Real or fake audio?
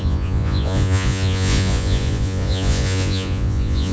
fake